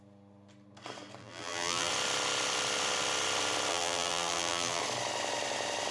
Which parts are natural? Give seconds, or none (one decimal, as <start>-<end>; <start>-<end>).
0.0-1.2; 1.9-3.7; 4.8-5.9